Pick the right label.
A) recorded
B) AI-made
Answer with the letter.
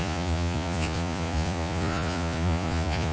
B